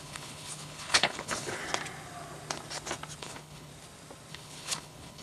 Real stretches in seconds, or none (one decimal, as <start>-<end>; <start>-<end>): 1.6-3.2; 3.7-4.3